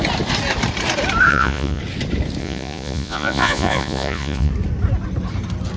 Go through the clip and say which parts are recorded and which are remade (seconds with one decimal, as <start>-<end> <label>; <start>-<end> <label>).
0.0-1.3 recorded; 1.3-1.8 remade; 1.8-2.4 recorded; 2.4-4.5 remade; 4.5-5.8 recorded